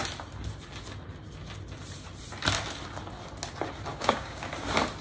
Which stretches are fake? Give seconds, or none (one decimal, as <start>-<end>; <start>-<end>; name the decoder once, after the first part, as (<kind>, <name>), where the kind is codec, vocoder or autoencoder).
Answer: 3.9-4.5 (codec, DAC)